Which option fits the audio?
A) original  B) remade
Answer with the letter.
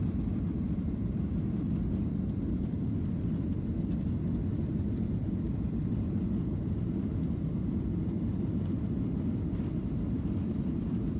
B